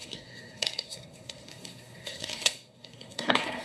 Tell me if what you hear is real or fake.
fake